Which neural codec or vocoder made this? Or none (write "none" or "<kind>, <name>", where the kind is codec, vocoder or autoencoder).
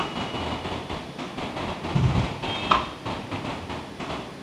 none